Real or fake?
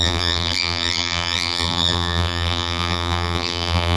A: fake